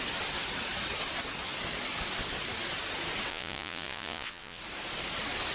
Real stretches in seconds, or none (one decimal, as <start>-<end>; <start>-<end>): 0.0-3.3; 4.6-5.5